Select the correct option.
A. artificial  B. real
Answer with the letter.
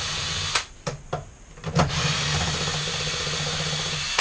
B